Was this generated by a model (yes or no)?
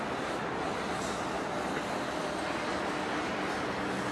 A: no